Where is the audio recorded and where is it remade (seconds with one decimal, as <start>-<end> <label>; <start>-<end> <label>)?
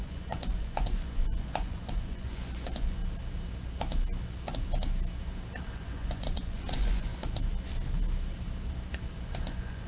0.0-3.0 remade; 3.0-5.7 recorded; 5.7-7.1 remade; 7.1-9.5 recorded; 9.5-9.9 remade